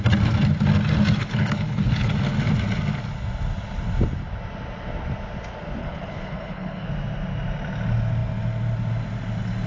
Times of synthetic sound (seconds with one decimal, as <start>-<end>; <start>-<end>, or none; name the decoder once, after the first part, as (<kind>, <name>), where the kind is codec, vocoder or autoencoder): 1.2-2.1 (codec, HILCodec); 5.8-6.9